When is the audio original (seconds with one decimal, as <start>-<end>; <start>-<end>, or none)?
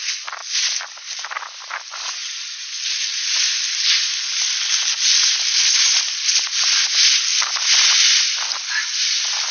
0.0-9.5